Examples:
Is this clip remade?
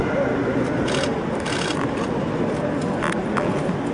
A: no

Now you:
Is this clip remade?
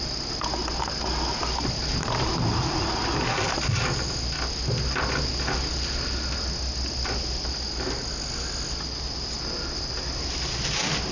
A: no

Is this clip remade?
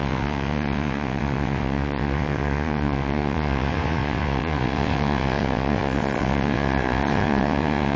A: yes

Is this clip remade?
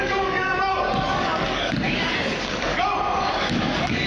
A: yes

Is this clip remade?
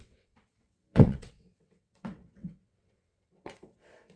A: yes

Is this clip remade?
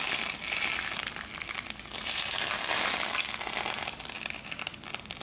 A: no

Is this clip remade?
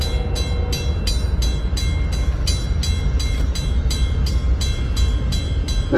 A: no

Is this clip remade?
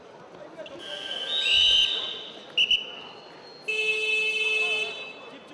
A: no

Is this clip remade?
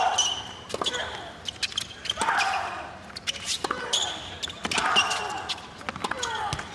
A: no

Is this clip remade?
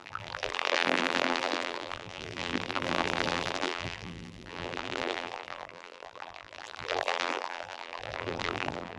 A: yes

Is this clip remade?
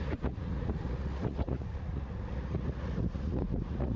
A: yes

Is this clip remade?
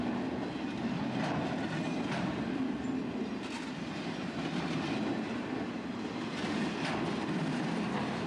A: no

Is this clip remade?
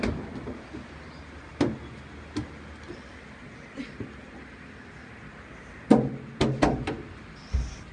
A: no